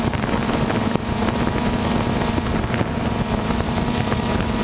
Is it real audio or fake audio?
real